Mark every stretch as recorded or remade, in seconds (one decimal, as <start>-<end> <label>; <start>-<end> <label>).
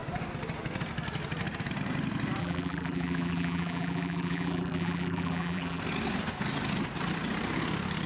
0.0-2.4 recorded; 2.4-5.8 remade; 5.8-8.1 recorded